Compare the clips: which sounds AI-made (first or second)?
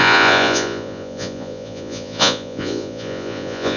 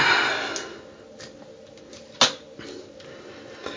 first